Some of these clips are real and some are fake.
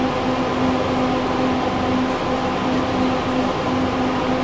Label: real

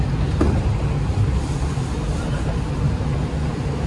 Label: real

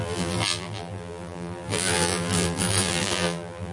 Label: fake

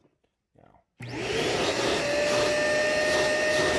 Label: real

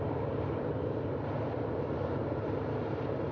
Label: fake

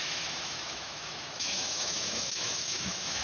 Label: fake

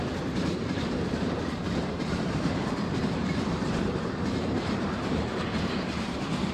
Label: fake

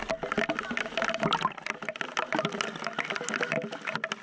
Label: real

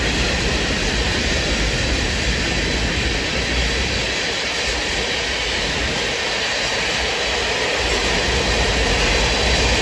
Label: real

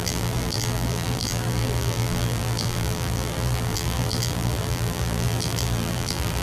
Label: fake